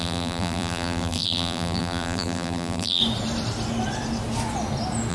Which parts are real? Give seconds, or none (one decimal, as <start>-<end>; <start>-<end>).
3.0-5.1